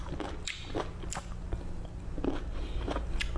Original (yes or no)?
yes